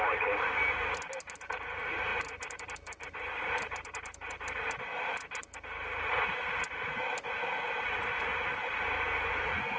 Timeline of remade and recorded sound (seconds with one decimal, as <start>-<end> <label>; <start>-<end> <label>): 0.0-2.1 recorded; 2.1-6.7 remade; 6.7-9.8 recorded